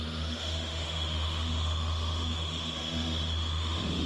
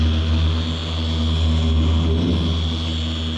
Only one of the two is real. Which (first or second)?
second